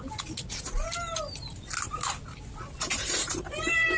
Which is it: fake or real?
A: real